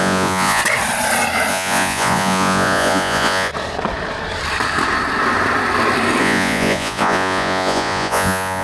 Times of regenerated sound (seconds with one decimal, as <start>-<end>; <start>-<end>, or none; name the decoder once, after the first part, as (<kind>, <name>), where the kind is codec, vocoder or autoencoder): 0.0-0.6 (vocoder, Vocos); 1.5-3.5; 6.2-8.6